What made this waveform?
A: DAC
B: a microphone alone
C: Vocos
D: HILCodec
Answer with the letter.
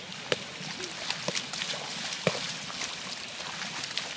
B